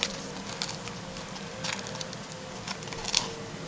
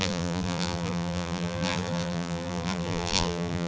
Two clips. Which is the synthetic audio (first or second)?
second